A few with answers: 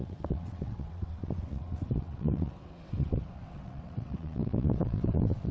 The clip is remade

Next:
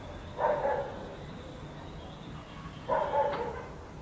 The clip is recorded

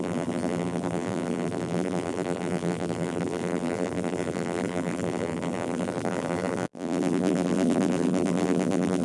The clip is remade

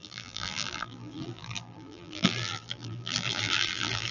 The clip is remade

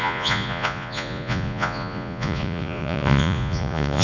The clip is remade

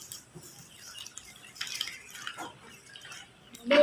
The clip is remade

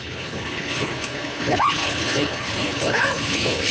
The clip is remade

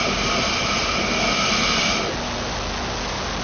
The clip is recorded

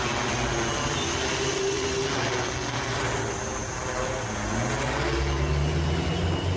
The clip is recorded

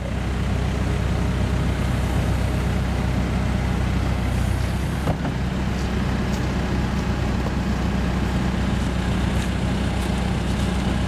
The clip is recorded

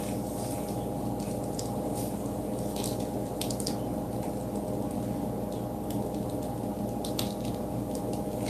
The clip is recorded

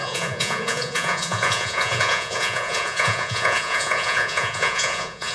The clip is remade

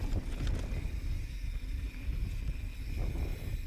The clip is recorded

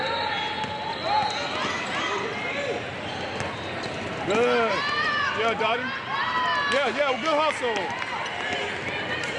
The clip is recorded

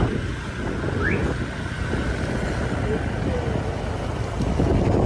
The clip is recorded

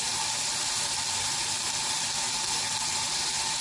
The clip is recorded